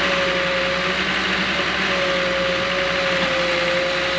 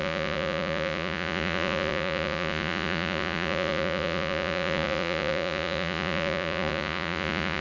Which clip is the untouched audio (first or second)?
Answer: first